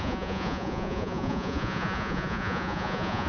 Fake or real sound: fake